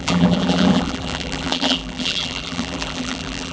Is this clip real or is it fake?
fake